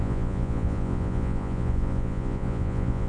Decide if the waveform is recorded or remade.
remade